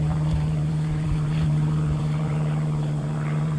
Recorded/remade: remade